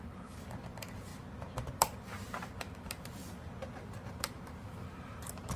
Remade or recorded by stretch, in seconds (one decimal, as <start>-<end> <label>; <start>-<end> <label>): 0.0-1.1 remade; 1.1-1.7 recorded; 1.7-3.2 remade; 3.2-3.8 recorded; 3.8-5.6 remade